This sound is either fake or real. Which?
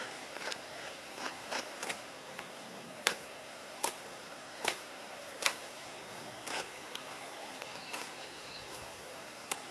fake